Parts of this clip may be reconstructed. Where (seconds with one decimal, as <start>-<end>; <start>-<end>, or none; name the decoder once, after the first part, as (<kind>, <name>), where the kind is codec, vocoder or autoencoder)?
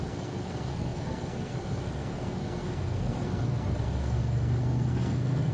0.0-5.5 (codec, SNAC)